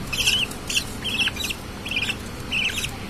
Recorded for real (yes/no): yes